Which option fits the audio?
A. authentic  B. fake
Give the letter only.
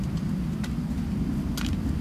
A